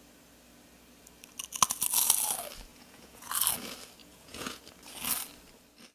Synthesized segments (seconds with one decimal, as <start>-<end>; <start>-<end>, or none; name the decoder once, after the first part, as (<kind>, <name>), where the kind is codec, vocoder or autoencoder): 2.7-3.3 (vocoder, Vocos); 4.0-4.6